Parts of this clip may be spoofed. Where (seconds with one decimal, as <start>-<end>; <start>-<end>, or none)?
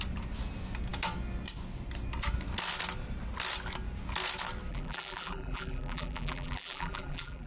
4.7-7.5